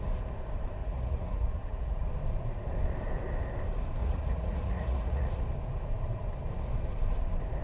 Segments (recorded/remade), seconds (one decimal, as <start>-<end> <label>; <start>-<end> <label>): 0.0-0.8 recorded; 0.8-2.1 remade; 2.1-4.0 recorded; 4.0-5.4 remade; 5.4-7.6 recorded